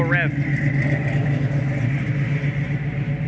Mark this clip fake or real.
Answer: real